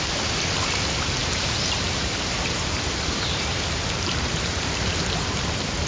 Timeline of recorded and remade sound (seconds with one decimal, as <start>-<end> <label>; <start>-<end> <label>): 0.0-1.2 recorded; 1.2-4.7 remade; 4.7-5.9 recorded